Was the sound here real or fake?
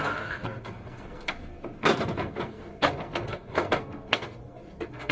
fake